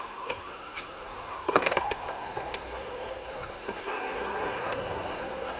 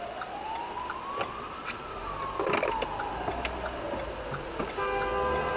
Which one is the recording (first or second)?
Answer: second